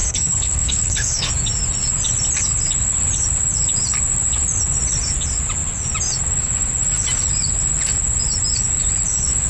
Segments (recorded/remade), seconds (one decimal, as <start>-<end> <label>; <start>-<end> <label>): 0.0-1.3 remade; 1.3-9.5 recorded